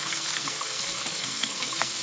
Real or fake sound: fake